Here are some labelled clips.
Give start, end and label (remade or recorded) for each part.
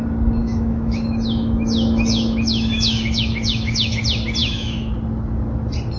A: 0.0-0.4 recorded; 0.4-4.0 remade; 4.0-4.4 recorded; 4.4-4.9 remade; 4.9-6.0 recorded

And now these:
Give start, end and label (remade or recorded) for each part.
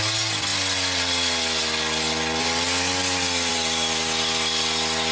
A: 0.0-5.1 recorded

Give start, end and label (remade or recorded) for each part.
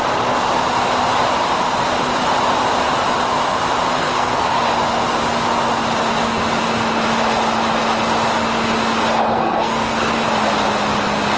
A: 0.0-4.0 recorded; 4.0-4.5 remade; 4.5-9.3 recorded; 9.3-10.1 remade; 10.1-11.4 recorded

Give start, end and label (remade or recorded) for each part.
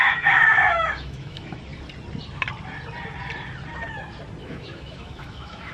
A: 0.0-1.7 remade; 1.7-4.4 recorded; 4.4-5.7 remade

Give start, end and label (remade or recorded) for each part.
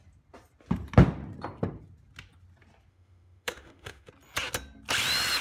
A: 0.0-2.9 recorded; 2.9-4.1 remade; 4.1-5.4 recorded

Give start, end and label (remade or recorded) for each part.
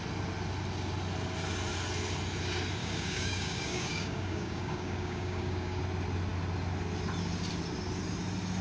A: 0.0-2.8 recorded; 2.8-5.8 remade; 5.8-8.6 recorded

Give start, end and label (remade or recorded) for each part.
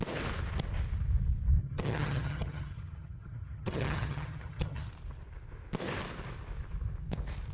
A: 0.0-1.6 recorded; 1.6-4.9 remade; 4.9-7.5 recorded